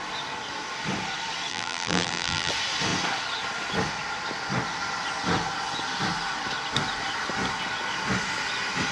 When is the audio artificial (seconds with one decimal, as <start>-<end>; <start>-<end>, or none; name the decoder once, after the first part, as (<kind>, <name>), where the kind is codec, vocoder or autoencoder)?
1.5-2.5 (vocoder, BigVGAN v2)